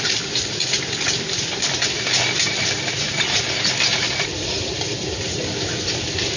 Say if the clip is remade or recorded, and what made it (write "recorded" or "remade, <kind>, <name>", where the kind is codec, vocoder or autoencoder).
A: remade, vocoder, BigVGAN v2